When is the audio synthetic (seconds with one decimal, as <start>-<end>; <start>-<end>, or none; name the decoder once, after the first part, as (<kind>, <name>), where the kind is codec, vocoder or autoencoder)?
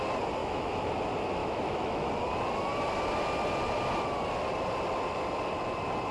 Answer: 0.4-0.9 (autoencoder, DAC-VAE); 1.4-2.1